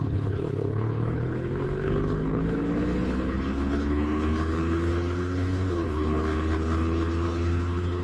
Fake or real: fake